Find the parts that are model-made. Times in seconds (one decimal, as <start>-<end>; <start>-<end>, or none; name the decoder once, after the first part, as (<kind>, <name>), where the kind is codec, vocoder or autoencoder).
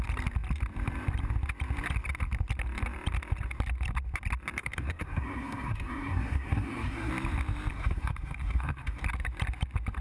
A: 4.6-7.1 (codec, SNAC); 7.7-9.0